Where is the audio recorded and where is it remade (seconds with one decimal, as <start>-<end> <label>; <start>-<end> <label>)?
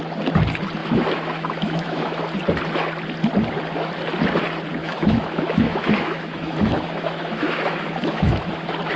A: 0.0-0.8 recorded; 0.8-2.2 remade; 2.2-4.8 recorded; 4.8-8.4 remade; 8.4-9.0 recorded